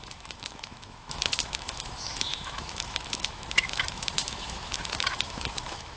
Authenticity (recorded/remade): remade